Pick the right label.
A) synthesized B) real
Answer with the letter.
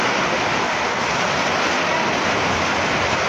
B